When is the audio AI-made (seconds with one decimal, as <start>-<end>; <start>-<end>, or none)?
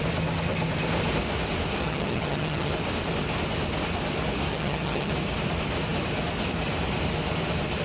1.8-2.7; 4.5-5.1